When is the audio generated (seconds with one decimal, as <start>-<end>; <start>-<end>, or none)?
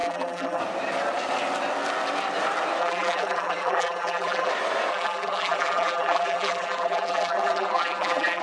0.0-0.6; 2.8-4.5; 4.9-8.4